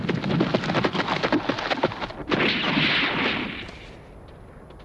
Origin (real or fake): real